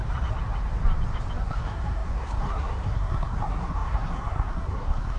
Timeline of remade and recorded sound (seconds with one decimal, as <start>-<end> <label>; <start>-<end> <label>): 0.0-1.4 recorded; 1.4-5.2 remade